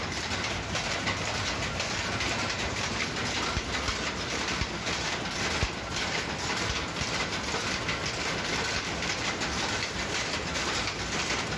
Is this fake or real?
real